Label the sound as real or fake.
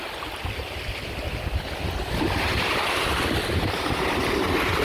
real